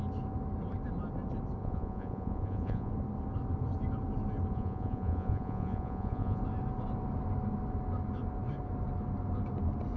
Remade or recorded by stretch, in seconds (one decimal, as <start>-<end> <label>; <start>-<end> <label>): 0.0-1.6 recorded; 1.6-2.9 remade; 2.9-4.5 recorded; 4.5-6.4 remade; 6.4-10.0 recorded